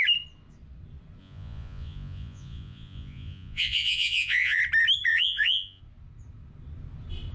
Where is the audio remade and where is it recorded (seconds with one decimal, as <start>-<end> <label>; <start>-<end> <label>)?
0.0-1.2 recorded; 1.2-4.6 remade; 4.6-5.1 recorded; 5.1-5.8 remade; 5.8-7.3 recorded